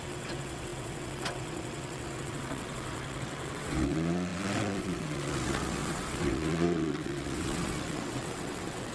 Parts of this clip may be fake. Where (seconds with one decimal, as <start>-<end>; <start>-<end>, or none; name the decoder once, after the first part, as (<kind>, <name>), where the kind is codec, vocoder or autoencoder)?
0.0-8.9 (vocoder, WaveNeXt)